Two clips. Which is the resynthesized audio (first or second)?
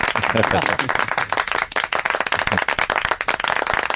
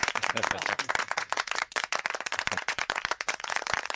second